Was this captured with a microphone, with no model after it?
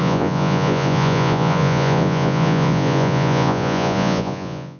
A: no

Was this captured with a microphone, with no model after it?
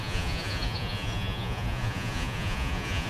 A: no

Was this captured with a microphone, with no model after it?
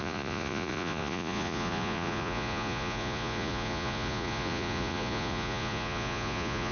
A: no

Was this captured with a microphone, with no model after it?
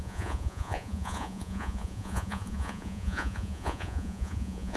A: no